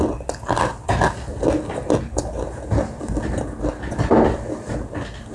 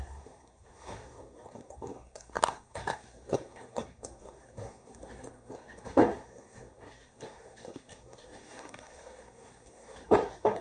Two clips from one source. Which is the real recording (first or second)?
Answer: first